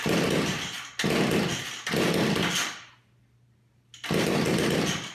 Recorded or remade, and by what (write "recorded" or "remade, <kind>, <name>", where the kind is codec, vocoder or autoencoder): recorded